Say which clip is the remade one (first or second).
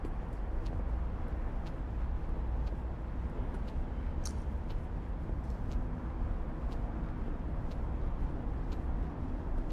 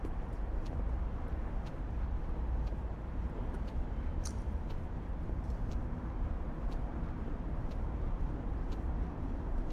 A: second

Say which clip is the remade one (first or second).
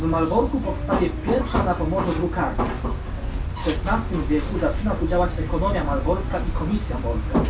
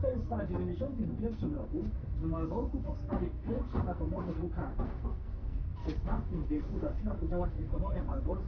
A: second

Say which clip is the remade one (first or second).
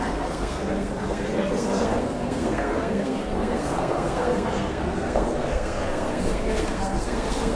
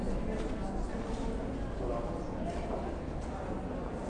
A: first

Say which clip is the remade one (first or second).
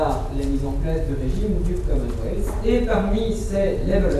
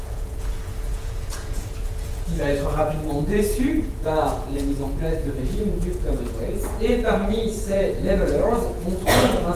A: second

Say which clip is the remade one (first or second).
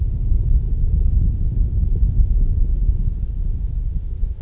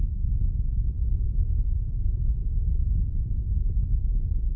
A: second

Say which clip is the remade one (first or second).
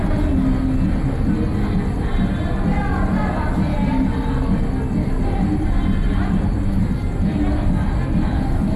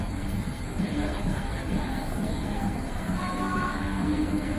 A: second